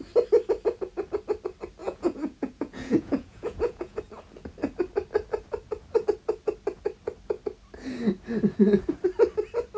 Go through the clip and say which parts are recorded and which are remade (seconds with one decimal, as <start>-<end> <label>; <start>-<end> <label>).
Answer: 0.0-1.8 recorded; 1.8-4.0 remade; 4.0-9.8 recorded